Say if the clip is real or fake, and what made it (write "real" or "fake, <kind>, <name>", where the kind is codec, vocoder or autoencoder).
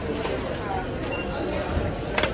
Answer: real